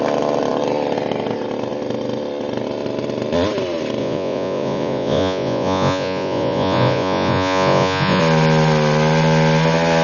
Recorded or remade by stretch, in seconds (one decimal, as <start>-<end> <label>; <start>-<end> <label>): 0.0-4.0 recorded; 4.0-8.2 remade; 8.2-10.0 recorded